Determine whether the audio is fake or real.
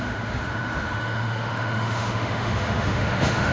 fake